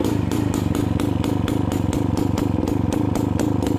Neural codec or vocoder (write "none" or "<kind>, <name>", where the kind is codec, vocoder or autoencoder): none